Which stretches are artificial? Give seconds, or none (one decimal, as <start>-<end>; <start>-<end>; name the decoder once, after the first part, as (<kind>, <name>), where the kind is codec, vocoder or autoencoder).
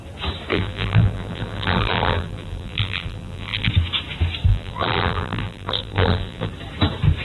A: 0.5-3.7 (vocoder, BigVGAN v2); 4.5-6.5